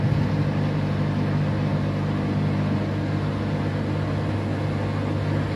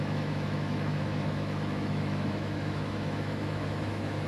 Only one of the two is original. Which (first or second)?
first